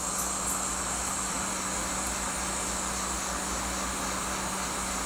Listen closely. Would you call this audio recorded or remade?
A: recorded